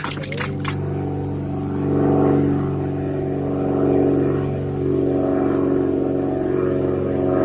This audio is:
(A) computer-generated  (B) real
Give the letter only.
B